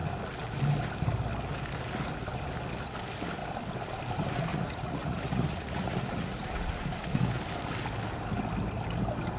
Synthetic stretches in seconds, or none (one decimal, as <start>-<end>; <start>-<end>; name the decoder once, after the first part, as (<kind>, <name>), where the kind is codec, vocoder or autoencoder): 4.5-7.4 (vocoder, Vocos)